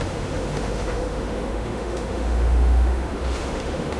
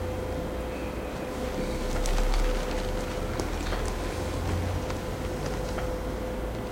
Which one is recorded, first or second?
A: second